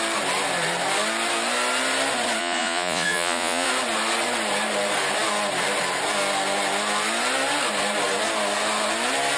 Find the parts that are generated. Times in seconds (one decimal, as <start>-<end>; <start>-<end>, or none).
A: 2.4-3.7